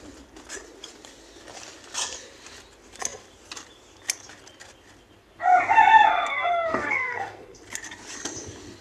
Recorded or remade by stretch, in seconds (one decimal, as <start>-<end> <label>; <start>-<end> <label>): 0.0-6.1 recorded; 6.1-7.6 remade; 7.6-8.8 recorded